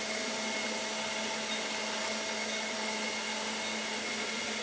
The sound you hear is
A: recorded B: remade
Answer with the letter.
A